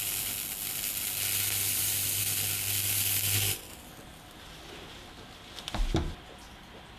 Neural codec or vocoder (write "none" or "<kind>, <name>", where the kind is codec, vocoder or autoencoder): none